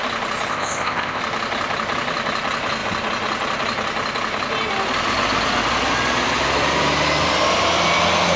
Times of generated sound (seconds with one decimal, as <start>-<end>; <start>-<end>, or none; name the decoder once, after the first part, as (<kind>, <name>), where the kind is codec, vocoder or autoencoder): 0.5-1.2 (codec, ZipCodec)